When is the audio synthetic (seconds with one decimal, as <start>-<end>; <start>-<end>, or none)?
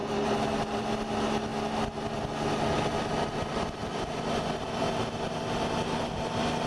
none